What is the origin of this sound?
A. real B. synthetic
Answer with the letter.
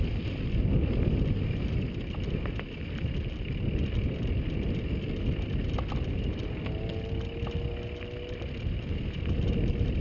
A